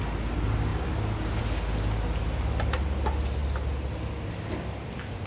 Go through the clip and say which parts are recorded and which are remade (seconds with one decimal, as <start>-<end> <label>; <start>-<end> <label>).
0.0-5.3 recorded